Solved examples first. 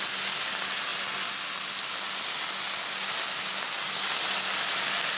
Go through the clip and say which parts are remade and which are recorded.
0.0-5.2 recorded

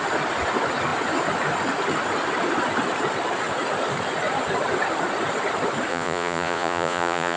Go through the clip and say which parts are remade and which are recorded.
0.0-5.9 recorded; 5.9-7.4 remade

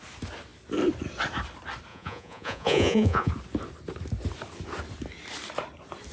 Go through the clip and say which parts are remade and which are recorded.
0.0-1.9 recorded; 1.9-3.3 remade; 3.3-6.1 recorded